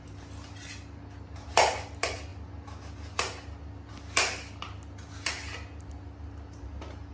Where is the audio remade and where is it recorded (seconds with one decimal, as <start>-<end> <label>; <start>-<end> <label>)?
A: 0.0-7.1 recorded